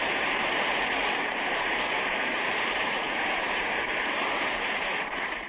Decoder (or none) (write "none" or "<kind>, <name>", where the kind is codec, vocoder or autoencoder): vocoder, BigVGAN v2